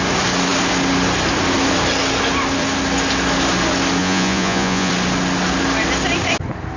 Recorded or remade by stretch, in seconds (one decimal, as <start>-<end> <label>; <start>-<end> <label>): 0.0-4.0 recorded; 4.0-4.9 remade; 4.9-6.8 recorded